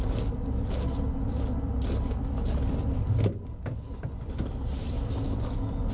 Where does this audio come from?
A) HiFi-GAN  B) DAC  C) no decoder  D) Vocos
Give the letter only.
C